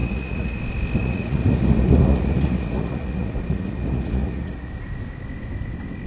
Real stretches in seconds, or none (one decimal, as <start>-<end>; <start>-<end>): 0.6-1.0; 4.7-6.1